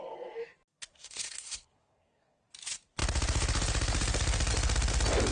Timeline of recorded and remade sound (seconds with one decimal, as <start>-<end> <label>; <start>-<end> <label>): 0.0-0.9 recorded; 0.9-2.4 remade; 2.4-5.3 recorded